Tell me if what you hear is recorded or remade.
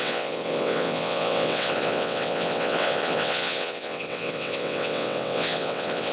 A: remade